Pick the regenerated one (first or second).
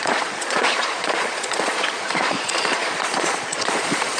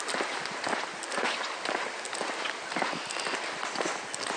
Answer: first